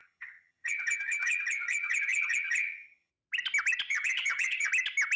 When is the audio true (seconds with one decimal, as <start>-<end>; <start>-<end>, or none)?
3.1-3.9; 4.7-5.2